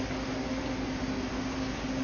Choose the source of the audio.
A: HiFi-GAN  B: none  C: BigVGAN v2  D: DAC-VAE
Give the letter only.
B